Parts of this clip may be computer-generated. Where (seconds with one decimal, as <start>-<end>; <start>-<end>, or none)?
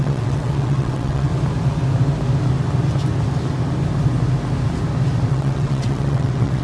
0.0-1.3; 5.3-6.6